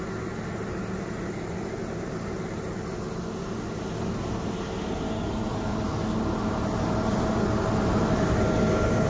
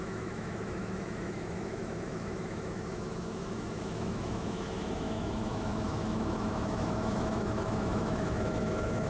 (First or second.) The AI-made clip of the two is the second